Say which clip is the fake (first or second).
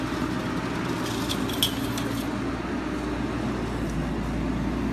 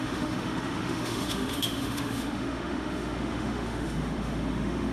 second